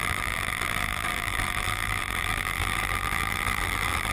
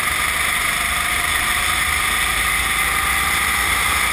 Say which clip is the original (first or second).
second